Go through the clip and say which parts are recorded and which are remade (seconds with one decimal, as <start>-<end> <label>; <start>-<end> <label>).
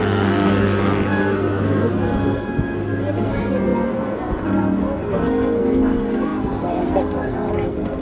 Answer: 0.0-8.0 remade